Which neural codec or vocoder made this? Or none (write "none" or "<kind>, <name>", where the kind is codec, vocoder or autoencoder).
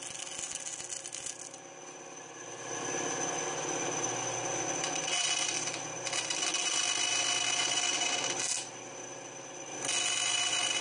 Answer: none